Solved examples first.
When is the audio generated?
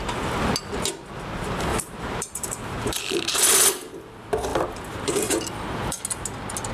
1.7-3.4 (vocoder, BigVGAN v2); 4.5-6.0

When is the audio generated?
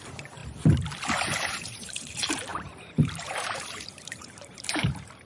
0.0-0.4 (vocoder, BigVGAN v2); 1.1-5.3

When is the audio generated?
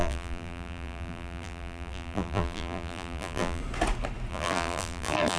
0.0-3.6 (vocoder, BigVGAN v2); 4.3-5.4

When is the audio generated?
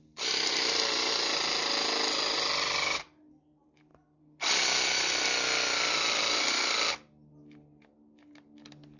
none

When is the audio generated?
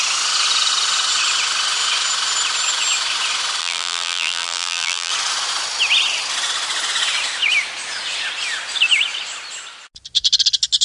3.6-5.1 (vocoder, BigVGAN v2)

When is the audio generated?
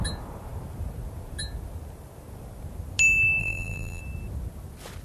3.4-4.0 (vocoder, BigVGAN v2)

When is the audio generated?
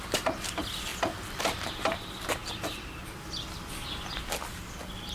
none